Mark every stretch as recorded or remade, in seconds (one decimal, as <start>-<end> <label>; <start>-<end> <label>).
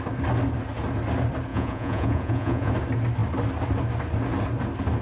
0.0-1.5 recorded; 1.5-2.7 remade; 2.7-5.0 recorded